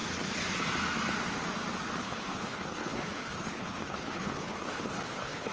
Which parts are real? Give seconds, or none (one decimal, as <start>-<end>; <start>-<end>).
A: 0.0-2.0